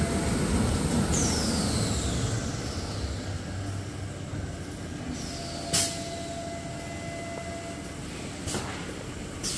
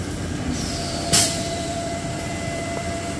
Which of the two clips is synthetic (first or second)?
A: second